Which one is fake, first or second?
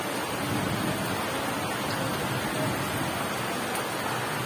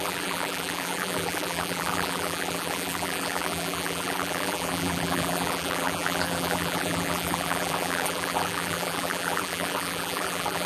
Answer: second